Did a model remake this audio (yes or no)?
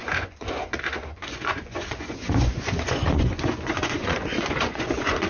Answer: yes